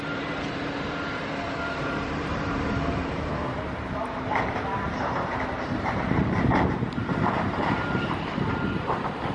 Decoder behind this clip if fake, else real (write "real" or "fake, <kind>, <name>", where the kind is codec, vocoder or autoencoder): fake, vocoder, BigVGAN v2